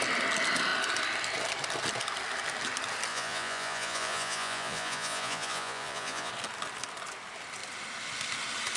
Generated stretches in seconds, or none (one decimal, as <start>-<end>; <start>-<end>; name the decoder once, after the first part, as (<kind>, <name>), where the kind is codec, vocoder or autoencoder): 3.1-6.3 (vocoder, Vocos)

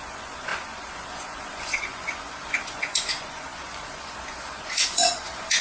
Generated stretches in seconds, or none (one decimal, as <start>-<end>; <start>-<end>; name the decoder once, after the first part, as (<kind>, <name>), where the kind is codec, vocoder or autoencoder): 0.0-5.6 (vocoder, Vocos)